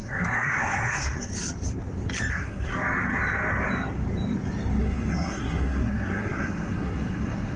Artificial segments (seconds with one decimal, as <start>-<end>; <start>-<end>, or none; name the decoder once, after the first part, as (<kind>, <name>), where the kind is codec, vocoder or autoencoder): 0.0-1.3 (codec, SNAC); 2.3-2.7; 4.8-7.6